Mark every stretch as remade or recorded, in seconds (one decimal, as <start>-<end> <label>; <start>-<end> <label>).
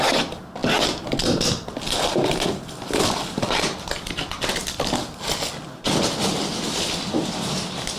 0.0-8.0 recorded